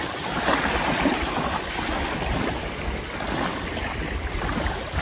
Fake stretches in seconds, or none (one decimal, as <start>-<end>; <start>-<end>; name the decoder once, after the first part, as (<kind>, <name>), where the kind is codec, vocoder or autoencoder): none